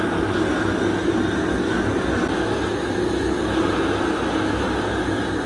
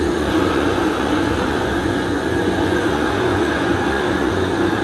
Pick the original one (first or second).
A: first